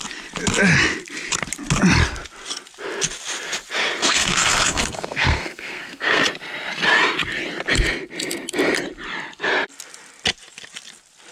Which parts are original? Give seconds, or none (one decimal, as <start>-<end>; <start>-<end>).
0.0-4.0; 6.2-11.3